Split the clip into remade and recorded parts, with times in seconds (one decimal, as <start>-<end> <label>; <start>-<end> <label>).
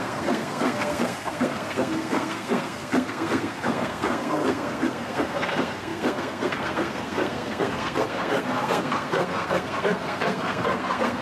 0.0-11.2 remade